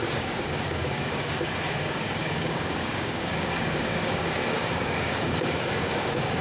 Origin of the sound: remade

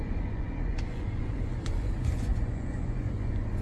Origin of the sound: remade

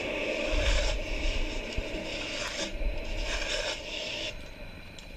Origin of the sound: remade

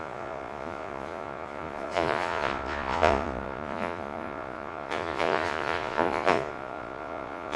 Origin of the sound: remade